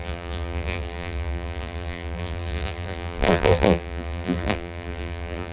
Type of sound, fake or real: fake